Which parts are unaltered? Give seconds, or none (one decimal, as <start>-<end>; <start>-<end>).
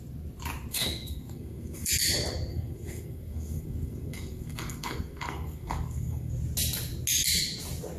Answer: 0.0-0.7; 1.9-2.5; 6.3-8.0